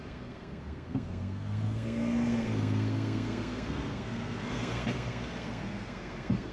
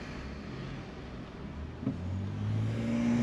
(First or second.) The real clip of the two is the second